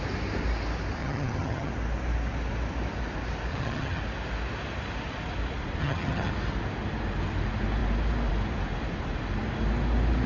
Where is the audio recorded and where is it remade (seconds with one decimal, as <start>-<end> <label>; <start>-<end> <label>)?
0.0-1.0 recorded; 1.0-1.7 remade; 1.7-3.5 recorded; 3.5-4.0 remade; 4.0-5.8 recorded; 5.8-6.3 remade; 6.3-10.3 recorded